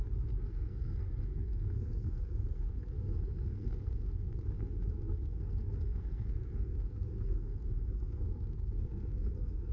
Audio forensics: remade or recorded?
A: remade